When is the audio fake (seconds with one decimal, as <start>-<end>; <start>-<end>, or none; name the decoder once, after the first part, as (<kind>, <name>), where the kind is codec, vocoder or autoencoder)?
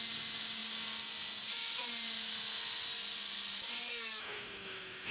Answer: 4.2-5.1 (codec, DAC)